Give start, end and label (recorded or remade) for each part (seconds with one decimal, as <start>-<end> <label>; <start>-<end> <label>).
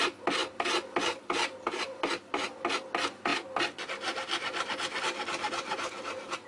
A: 0.0-6.5 recorded